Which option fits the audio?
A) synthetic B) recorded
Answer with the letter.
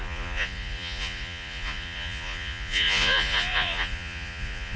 A